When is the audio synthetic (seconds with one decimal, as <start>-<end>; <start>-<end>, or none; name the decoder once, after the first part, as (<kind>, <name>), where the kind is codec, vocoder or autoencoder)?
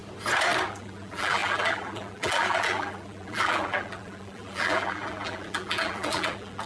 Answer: 0.7-6.7 (vocoder, BigVGAN v2)